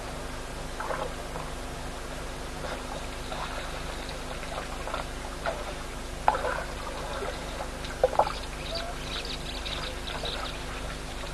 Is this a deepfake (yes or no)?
no